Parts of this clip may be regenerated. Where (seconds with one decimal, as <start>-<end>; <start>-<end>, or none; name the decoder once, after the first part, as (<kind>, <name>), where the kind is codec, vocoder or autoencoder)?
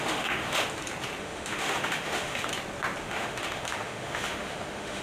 0.0-0.6 (autoencoder, DAC-VAE); 1.2-2.5; 3.0-5.0